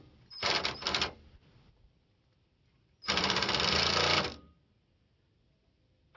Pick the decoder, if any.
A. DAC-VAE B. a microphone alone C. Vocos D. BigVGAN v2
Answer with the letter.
D